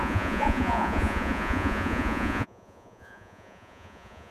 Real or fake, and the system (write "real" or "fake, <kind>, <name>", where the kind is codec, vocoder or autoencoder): fake, vocoder, Vocos